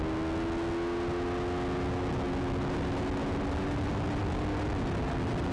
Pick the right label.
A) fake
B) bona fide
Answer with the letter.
B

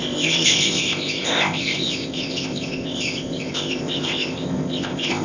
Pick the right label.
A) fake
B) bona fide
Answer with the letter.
A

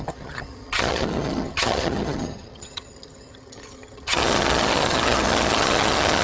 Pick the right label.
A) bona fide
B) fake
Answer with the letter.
B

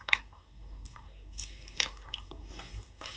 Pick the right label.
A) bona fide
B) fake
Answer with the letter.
B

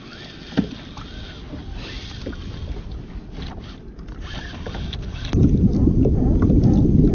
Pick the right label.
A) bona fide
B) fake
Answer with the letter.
A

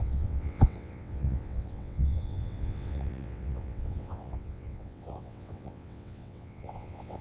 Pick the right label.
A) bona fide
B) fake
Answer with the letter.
B